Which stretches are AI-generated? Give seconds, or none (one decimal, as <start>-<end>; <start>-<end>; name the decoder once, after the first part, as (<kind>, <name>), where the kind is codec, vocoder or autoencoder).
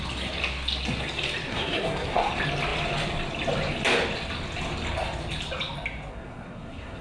1.5-2.3 (codec, SNAC); 6.1-7.0